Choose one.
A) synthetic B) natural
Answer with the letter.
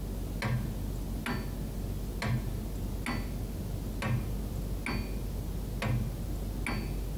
B